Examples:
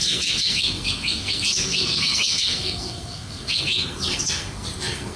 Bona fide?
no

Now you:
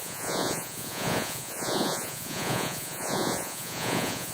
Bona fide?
no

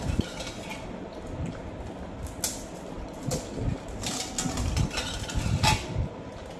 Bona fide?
yes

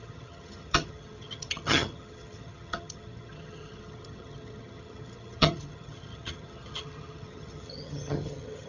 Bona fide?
no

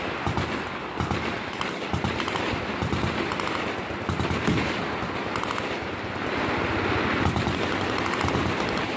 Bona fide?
yes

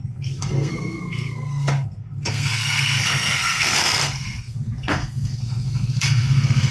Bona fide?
no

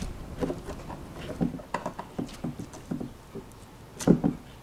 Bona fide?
yes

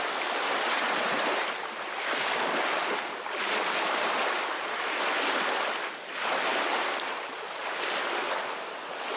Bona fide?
yes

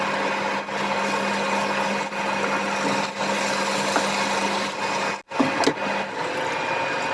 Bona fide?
yes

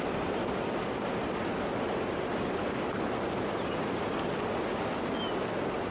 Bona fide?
yes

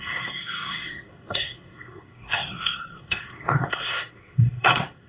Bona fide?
no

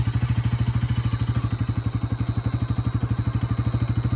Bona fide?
yes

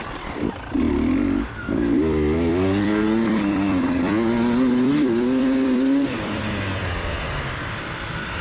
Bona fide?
no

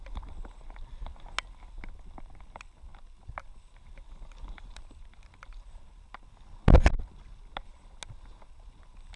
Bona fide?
yes